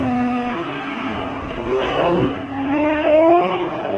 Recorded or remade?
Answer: remade